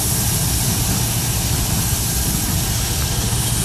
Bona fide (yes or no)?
yes